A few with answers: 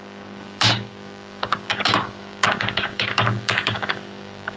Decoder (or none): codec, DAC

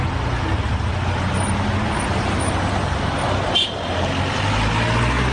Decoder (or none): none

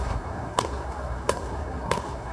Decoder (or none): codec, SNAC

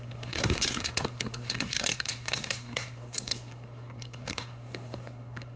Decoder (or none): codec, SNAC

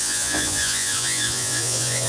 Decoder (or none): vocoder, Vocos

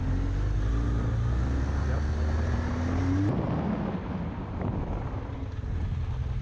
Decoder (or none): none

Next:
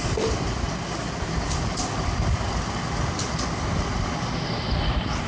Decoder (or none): none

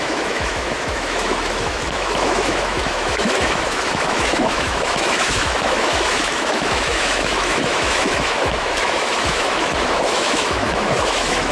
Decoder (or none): autoencoder, DAC-VAE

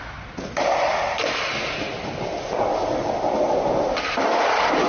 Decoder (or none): none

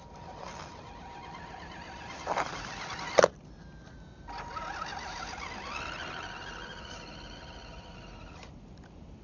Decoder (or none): none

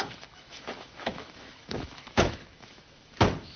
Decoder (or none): autoencoder, DAC-VAE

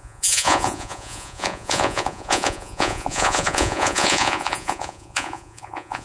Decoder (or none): vocoder, Vocos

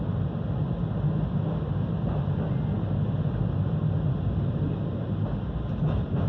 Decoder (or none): none